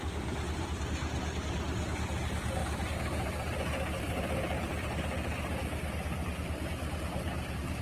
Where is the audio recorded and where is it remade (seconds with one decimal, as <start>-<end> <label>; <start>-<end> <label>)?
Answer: 0.0-5.6 remade; 5.6-6.6 recorded; 6.6-7.8 remade